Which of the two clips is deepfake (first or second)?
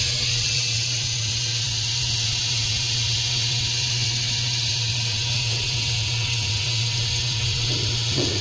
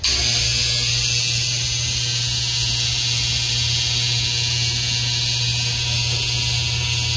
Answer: first